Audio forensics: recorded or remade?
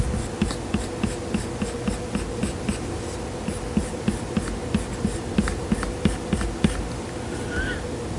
recorded